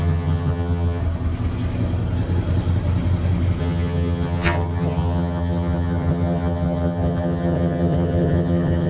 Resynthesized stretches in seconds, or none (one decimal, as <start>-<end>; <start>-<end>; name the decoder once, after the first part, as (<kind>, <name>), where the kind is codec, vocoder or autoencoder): 0.0-1.0 (vocoder, HiFi-GAN); 3.6-8.9